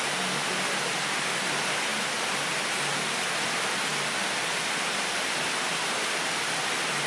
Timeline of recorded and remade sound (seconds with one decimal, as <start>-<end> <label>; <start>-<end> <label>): 0.0-1.9 recorded; 1.9-2.5 remade; 2.5-3.9 recorded; 3.9-5.2 remade; 5.2-7.1 recorded